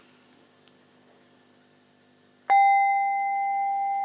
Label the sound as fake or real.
real